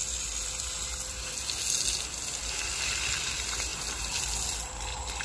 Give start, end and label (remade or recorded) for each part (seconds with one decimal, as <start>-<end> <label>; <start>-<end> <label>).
0.0-5.2 recorded